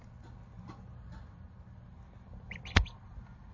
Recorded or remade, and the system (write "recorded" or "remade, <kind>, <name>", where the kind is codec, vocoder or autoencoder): remade, vocoder, BigVGAN v2